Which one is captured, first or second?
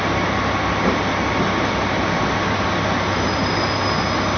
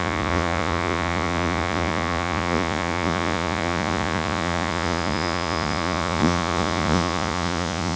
first